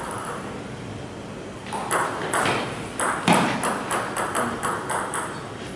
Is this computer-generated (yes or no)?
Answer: no